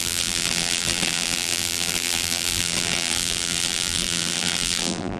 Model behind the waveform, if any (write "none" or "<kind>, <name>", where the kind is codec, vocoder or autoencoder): vocoder, BigVGAN v2